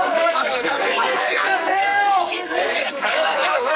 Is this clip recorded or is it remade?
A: remade